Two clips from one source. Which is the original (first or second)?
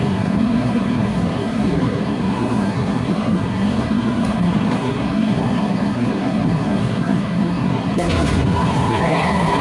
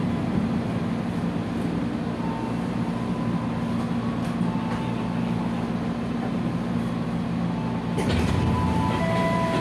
second